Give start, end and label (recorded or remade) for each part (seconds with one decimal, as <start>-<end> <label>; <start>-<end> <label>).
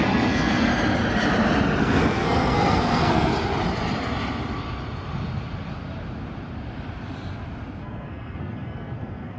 0.0-0.7 remade; 0.7-1.8 recorded; 1.8-3.3 remade; 3.3-7.8 recorded; 7.8-9.4 remade